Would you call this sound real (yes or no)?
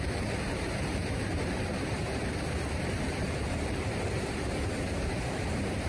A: no